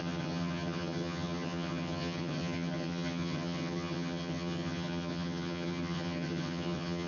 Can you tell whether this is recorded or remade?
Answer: remade